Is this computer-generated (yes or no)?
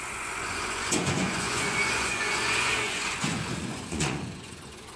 yes